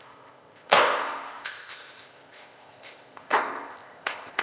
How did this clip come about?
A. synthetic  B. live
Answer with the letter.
A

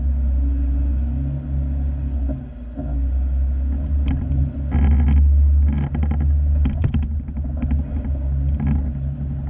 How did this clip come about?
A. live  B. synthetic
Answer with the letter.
A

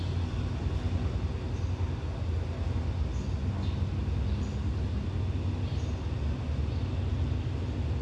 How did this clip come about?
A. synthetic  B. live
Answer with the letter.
B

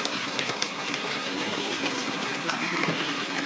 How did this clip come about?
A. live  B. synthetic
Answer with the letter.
B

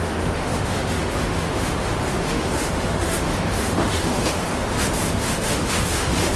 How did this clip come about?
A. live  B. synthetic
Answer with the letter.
B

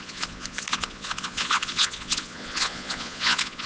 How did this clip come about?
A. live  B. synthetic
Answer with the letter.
B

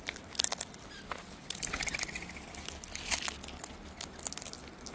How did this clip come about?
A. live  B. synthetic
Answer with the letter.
A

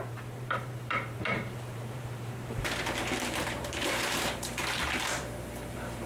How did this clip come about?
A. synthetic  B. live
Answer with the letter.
A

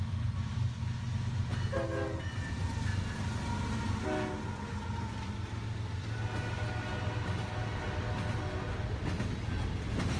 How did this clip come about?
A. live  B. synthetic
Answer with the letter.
A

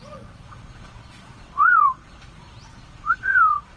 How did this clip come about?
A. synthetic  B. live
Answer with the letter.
A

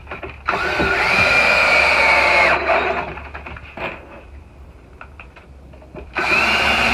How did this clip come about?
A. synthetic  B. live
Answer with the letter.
B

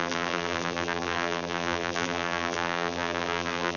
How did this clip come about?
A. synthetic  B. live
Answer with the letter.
A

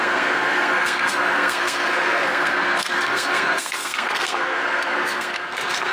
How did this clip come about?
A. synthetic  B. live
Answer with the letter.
A